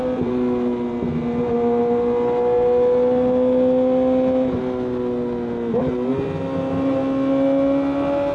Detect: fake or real real